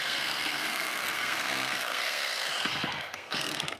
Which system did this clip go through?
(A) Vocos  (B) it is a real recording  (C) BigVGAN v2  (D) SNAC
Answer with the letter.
D